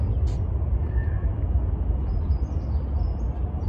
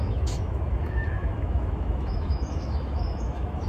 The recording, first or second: first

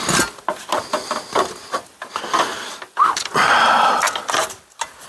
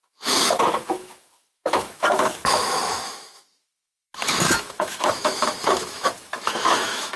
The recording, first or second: first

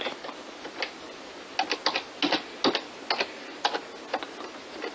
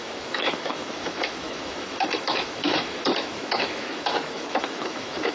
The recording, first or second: first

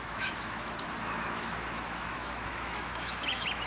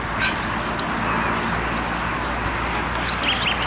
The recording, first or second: second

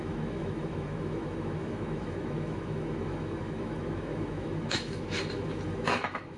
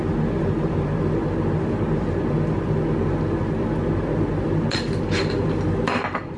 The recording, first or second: second